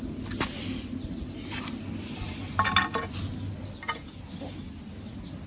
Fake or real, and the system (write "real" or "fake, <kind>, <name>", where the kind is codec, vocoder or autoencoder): real